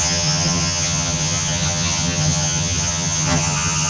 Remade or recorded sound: remade